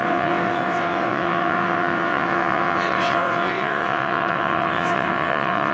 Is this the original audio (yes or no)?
no